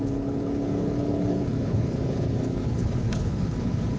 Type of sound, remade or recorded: remade